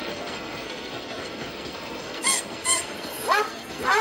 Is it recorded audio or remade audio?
remade